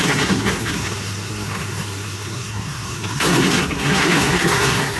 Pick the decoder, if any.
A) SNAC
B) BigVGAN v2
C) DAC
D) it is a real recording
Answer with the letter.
A